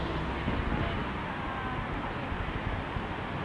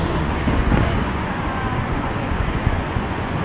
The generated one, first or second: second